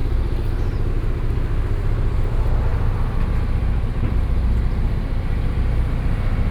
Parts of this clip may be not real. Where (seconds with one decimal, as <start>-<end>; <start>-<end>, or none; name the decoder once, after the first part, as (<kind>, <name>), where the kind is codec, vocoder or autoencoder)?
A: none